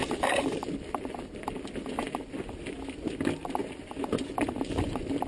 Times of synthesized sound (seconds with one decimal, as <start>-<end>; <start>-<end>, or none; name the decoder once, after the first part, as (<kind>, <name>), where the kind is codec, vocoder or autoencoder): none